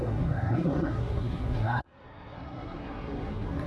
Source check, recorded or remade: remade